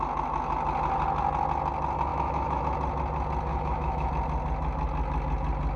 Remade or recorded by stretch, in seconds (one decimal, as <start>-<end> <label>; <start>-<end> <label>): 0.0-2.1 recorded; 2.1-2.6 remade; 2.6-3.5 recorded; 3.5-4.1 remade; 4.1-5.8 recorded